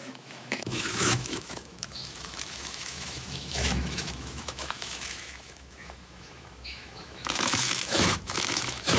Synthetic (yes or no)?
yes